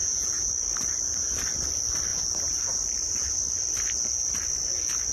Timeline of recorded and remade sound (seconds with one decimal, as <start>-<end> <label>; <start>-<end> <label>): 0.0-0.5 remade; 0.5-5.1 recorded